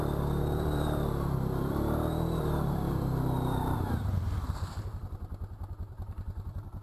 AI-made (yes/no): yes